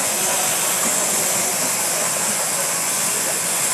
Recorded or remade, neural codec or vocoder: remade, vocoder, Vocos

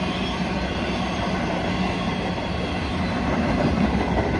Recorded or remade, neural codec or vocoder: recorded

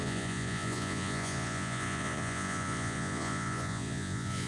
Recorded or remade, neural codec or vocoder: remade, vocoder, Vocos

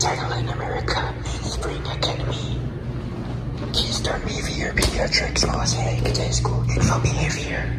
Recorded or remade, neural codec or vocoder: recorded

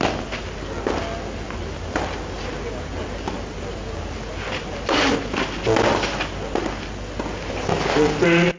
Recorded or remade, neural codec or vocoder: recorded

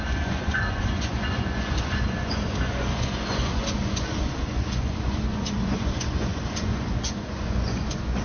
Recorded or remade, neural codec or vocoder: remade, vocoder, Vocos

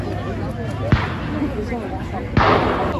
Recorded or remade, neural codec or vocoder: recorded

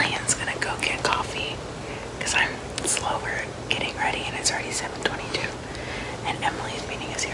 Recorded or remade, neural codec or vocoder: recorded